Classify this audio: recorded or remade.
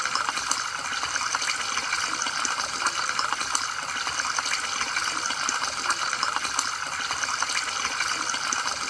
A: recorded